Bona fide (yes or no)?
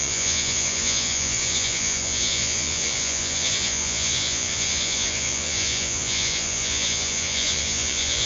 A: no